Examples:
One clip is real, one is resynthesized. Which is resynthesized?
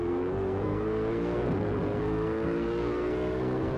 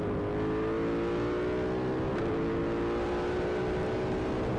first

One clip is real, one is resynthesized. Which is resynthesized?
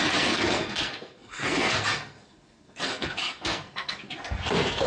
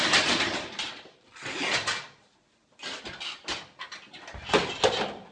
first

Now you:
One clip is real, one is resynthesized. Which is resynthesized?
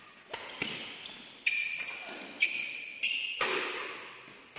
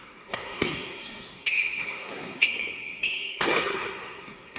second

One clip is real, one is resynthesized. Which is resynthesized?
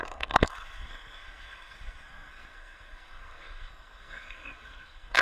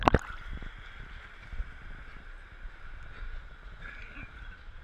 first